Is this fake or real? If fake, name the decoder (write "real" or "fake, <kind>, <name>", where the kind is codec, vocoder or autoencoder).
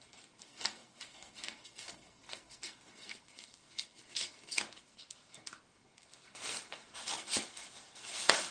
fake, codec, SNAC